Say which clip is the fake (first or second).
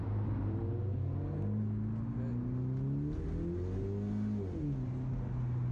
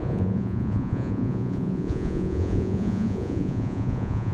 second